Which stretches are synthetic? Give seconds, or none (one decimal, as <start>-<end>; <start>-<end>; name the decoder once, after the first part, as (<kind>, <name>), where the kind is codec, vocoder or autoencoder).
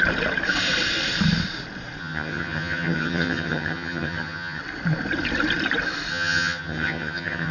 2.0-4.6 (vocoder, HiFi-GAN); 6.1-7.5